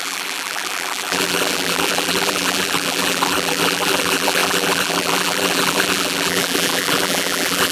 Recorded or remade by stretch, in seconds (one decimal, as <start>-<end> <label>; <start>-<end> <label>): 0.0-7.7 remade